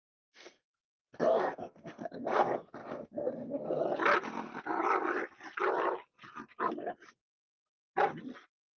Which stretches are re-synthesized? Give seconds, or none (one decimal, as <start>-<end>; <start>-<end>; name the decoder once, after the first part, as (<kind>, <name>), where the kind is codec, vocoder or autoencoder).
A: 0.0-3.8 (codec, SNAC)